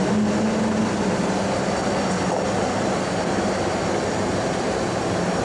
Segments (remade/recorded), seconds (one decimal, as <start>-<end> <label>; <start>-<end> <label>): 0.0-5.4 recorded